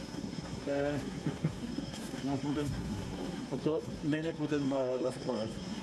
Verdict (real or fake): fake